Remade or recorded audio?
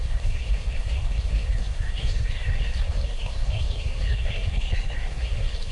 remade